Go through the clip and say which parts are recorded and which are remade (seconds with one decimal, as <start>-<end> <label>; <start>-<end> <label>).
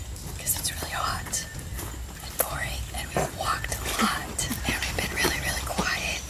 0.0-6.3 recorded